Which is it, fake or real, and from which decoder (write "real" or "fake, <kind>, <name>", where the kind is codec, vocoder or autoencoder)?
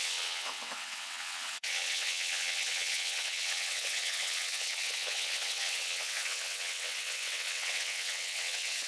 fake, vocoder, WaveNeXt